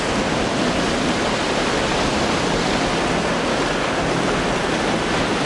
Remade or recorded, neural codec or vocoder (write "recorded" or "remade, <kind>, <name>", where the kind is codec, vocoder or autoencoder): recorded